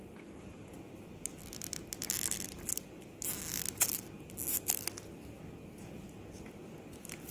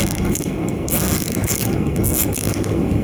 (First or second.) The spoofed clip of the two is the second